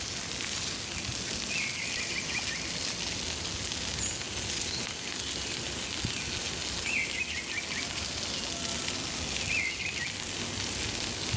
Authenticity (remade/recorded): recorded